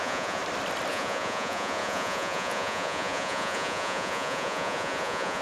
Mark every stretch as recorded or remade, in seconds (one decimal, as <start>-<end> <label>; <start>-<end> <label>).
0.0-0.4 remade; 0.4-0.9 recorded; 0.9-5.4 remade